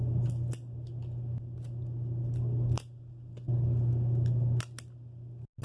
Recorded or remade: recorded